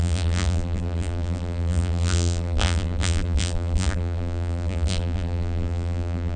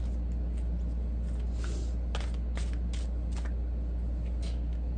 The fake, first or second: first